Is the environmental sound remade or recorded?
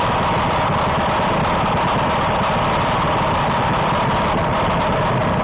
recorded